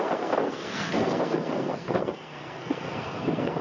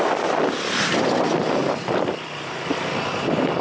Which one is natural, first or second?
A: second